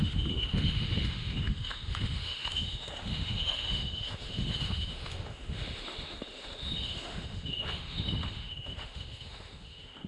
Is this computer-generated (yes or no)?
yes